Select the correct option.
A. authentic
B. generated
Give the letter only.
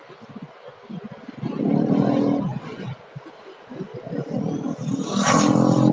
A